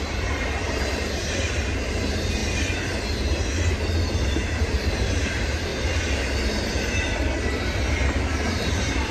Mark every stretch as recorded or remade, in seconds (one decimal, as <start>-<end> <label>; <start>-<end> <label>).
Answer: 0.0-2.4 remade; 2.4-4.6 recorded; 4.6-5.7 remade; 5.7-8.7 recorded; 8.7-9.1 remade